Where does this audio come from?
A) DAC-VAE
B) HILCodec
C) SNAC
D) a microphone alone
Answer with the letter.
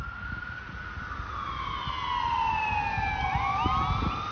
D